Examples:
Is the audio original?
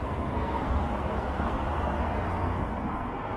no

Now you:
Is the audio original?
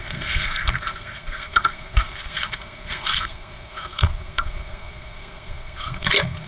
no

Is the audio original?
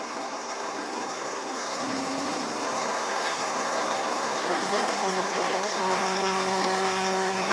no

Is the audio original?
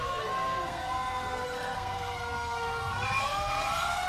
no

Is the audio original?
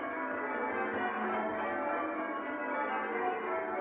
yes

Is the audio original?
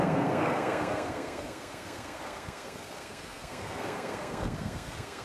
no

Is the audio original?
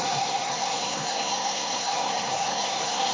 no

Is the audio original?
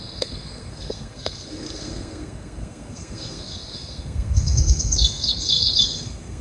no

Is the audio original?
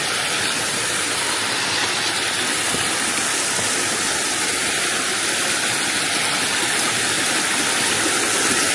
yes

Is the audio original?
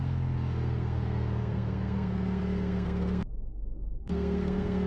no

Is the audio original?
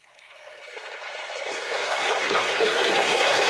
no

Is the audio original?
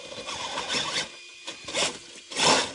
yes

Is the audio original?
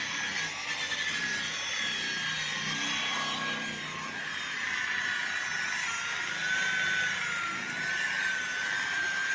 yes